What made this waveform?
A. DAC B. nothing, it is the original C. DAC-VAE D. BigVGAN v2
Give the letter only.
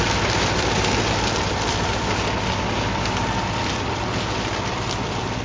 B